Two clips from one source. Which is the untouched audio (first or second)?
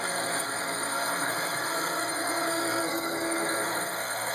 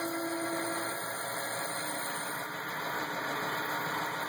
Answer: second